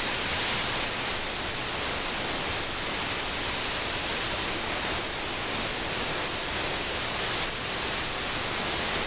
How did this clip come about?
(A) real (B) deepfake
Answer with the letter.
A